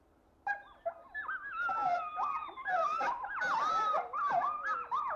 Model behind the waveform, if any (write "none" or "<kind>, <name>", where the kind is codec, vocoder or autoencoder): none